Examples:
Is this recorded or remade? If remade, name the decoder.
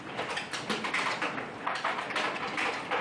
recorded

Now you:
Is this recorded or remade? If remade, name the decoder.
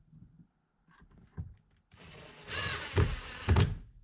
recorded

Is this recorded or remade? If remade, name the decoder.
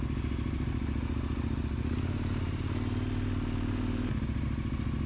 recorded